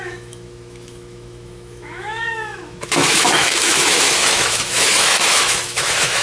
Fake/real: fake